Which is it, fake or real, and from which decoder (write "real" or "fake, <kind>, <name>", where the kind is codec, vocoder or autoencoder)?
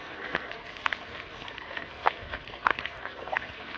fake, codec, SNAC